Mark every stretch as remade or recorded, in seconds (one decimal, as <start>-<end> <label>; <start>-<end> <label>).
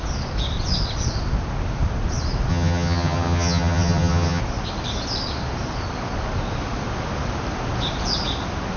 0.0-2.5 recorded; 2.5-4.4 remade; 4.4-8.8 recorded